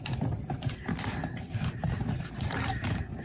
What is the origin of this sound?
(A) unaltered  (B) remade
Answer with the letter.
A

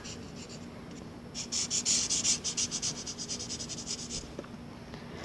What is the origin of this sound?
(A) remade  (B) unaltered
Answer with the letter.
B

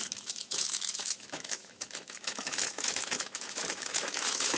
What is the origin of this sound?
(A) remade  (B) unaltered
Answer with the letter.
A